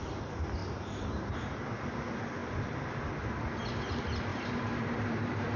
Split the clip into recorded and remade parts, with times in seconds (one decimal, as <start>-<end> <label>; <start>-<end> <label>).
0.0-0.6 recorded; 0.6-1.4 remade; 1.4-4.3 recorded; 4.3-5.6 remade